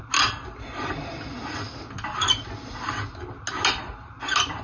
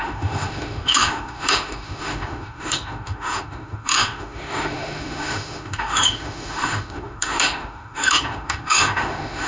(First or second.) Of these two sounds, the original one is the first